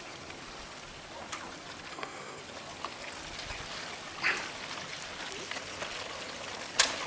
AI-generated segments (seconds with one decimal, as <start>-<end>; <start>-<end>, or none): 1.9-2.4